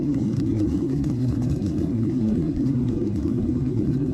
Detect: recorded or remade remade